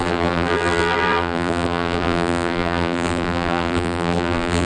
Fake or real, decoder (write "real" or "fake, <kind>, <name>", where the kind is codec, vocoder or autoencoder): fake, vocoder, BigVGAN v2